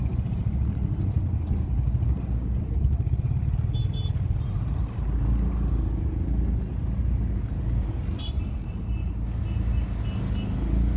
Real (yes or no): yes